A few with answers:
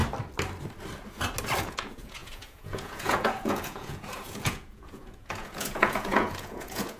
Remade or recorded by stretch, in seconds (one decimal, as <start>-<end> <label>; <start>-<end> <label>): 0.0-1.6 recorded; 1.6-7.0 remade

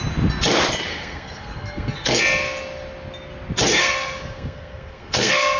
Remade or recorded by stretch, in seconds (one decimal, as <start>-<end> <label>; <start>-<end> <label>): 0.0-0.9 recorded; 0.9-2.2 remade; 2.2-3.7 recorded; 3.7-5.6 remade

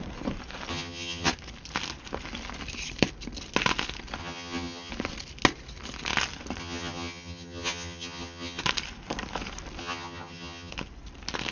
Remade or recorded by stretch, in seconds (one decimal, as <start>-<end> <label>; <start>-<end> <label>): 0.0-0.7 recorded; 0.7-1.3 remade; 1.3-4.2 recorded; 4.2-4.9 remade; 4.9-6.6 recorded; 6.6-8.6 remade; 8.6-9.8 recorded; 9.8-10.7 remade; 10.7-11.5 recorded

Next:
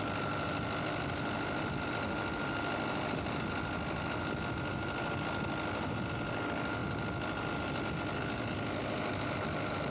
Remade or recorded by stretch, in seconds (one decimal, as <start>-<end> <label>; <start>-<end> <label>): 0.0-9.9 recorded

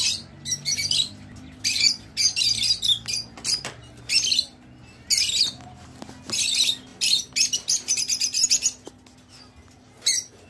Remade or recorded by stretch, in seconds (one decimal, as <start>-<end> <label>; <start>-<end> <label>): 0.0-10.5 recorded